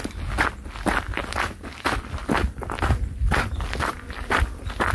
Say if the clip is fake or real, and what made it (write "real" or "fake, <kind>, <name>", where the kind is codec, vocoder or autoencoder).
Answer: real